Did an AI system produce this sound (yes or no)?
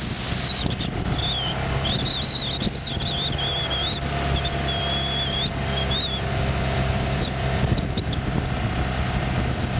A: no